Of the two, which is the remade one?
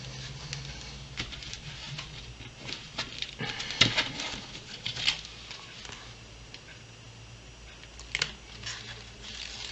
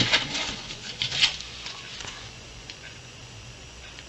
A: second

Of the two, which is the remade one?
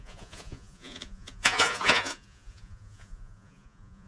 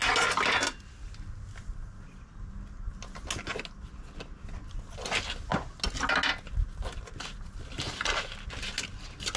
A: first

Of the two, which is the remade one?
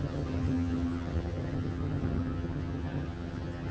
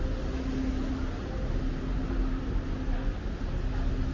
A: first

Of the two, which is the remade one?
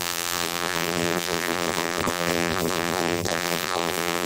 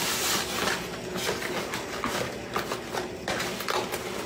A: first